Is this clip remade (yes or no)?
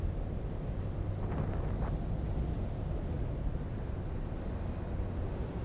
no